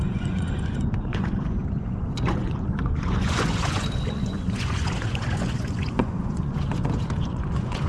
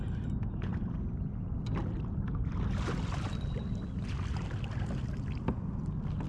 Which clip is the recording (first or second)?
second